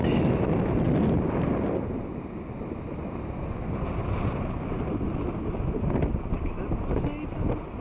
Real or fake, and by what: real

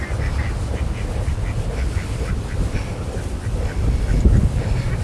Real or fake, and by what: real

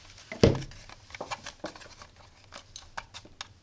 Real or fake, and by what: real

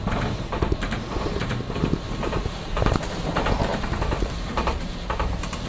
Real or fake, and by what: fake, vocoder, BigVGAN v2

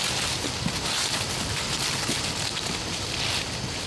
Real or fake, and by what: real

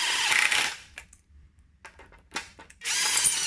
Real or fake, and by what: real